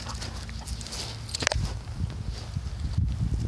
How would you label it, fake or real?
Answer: real